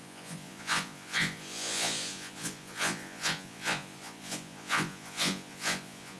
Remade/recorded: remade